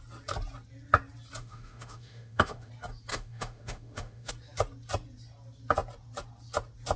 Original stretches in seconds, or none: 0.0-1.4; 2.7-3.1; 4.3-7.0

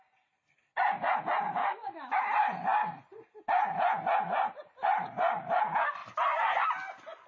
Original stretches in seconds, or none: 0.0-1.6; 2.2-7.3

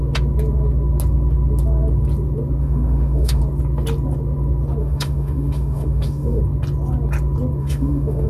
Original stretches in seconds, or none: 0.0-2.6; 3.4-4.8; 6.4-7.6

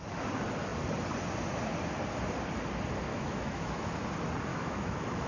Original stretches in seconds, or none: 0.0-3.1; 3.9-4.5

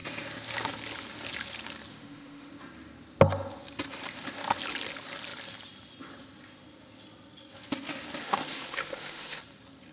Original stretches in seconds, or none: 0.0-1.9; 2.5-8.2; 9.4-9.9